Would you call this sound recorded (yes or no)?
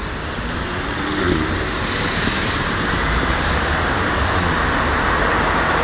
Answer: no